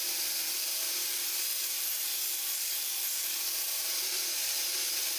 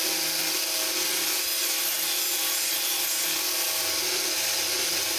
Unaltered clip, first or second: second